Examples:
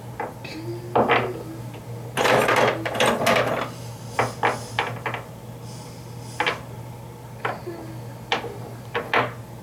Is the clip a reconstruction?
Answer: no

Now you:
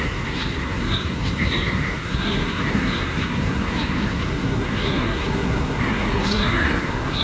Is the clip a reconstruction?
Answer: yes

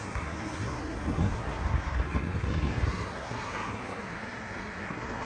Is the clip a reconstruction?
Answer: yes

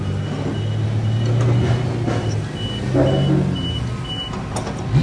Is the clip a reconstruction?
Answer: no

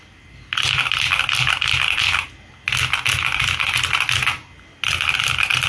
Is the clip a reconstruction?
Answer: no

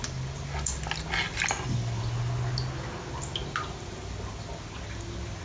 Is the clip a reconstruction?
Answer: no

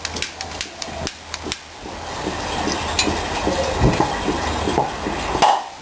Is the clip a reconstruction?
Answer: no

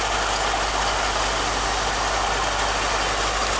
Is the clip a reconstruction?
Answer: no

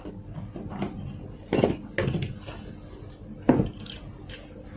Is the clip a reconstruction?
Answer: no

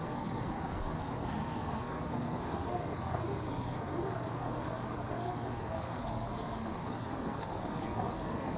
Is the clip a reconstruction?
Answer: yes